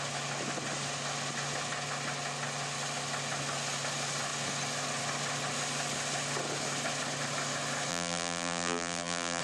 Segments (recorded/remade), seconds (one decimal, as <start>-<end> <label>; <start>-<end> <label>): 0.0-7.9 recorded; 7.9-9.4 remade